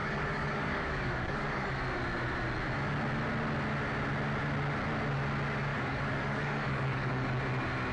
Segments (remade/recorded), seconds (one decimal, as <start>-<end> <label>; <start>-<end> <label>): 0.0-1.8 remade; 1.8-5.7 recorded; 5.7-7.3 remade; 7.3-7.9 recorded